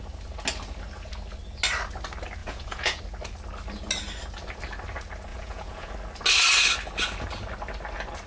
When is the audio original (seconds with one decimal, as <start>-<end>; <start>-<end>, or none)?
0.0-2.4; 3.0-5.3; 5.9-8.3